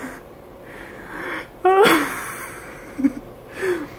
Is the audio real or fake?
real